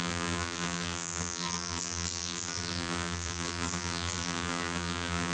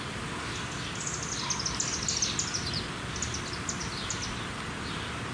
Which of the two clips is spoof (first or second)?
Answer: first